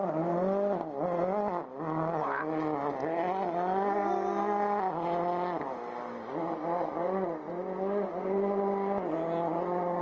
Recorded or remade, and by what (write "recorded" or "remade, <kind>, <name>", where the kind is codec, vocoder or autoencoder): recorded